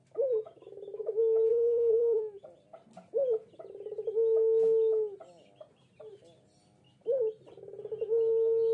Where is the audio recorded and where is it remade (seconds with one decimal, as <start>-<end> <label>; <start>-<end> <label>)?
0.0-1.5 recorded; 1.5-2.2 remade; 2.2-8.7 recorded